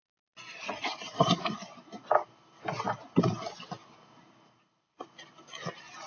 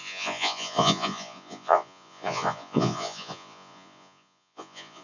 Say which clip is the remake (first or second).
second